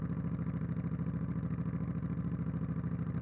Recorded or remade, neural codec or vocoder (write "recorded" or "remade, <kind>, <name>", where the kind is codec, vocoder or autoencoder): recorded